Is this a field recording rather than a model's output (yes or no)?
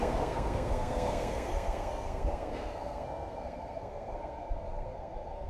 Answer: no